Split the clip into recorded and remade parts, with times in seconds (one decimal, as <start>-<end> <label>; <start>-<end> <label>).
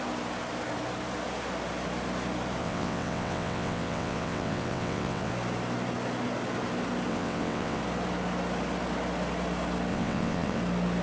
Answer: 0.0-2.6 recorded; 2.6-5.3 remade; 5.3-7.1 recorded; 7.1-7.8 remade; 7.8-9.9 recorded; 9.9-10.6 remade; 10.6-11.0 recorded